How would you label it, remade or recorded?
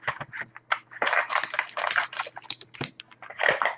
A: recorded